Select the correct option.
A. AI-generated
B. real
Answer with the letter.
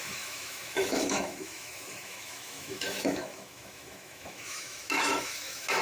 A